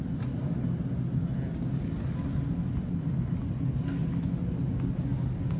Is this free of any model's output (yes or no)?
yes